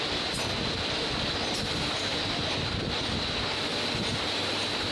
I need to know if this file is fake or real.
real